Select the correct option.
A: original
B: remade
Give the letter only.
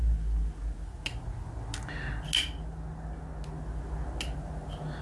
A